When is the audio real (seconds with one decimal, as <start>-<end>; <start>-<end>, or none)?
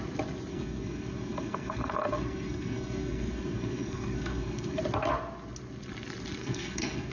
0.0-0.5; 4.8-6.4